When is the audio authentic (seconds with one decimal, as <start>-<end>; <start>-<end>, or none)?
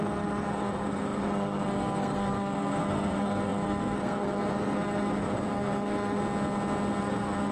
6.2-7.0